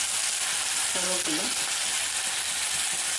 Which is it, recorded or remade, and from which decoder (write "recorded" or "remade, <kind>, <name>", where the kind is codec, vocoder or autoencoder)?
recorded